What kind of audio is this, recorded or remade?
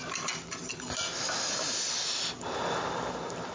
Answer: recorded